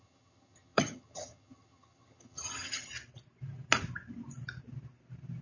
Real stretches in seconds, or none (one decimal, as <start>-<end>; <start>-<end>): 2.9-5.4